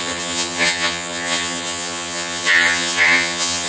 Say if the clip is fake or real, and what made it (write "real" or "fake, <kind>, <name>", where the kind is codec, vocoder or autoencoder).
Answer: fake, vocoder, HiFi-GAN